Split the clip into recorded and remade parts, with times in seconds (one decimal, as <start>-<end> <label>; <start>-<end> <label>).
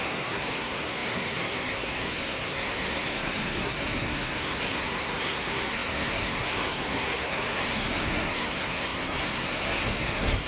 0.0-10.5 remade